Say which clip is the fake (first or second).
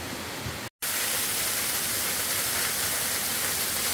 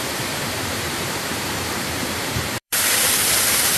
second